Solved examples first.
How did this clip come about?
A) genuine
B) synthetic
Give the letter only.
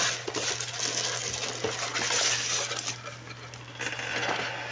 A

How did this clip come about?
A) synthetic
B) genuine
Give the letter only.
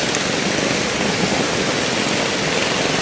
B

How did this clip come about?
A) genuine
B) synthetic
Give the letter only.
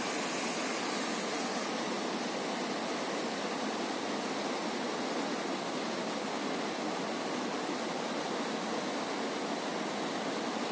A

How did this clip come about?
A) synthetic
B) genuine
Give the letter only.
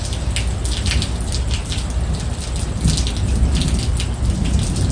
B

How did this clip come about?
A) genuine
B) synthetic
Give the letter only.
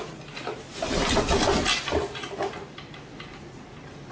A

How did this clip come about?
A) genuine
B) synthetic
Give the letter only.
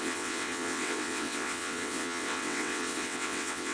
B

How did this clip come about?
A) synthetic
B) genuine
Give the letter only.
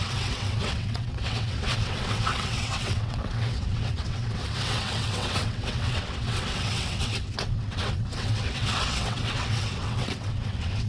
A